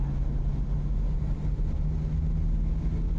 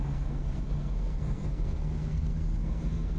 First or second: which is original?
first